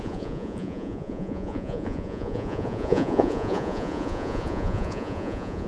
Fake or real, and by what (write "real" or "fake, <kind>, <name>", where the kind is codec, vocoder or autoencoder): fake, vocoder, Vocos